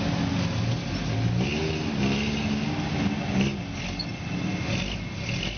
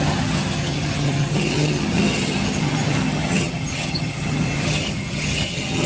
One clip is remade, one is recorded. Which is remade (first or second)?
second